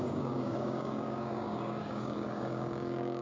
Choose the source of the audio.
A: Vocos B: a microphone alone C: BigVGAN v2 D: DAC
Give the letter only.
D